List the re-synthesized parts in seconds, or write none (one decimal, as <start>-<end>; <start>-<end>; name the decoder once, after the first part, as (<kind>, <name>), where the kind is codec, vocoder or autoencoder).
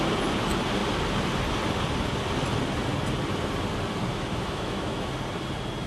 4.1-5.1 (autoencoder, DAC-VAE)